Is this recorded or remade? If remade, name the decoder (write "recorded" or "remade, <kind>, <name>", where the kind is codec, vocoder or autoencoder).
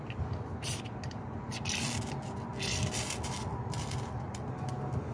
recorded